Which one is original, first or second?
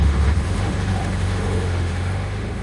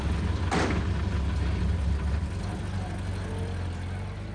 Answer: second